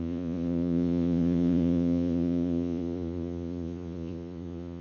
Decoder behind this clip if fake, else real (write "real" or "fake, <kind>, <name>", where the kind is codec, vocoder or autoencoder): fake, vocoder, Vocos